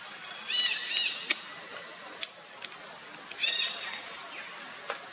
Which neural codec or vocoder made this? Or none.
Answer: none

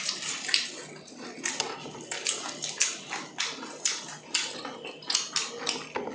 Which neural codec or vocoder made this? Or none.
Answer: none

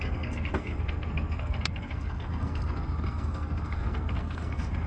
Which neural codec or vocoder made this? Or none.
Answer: codec, SNAC